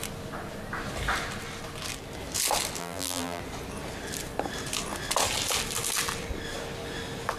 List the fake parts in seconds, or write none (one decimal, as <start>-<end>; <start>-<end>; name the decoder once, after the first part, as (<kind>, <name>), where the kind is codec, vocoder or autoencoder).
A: 2.8-3.4 (vocoder, BigVGAN v2)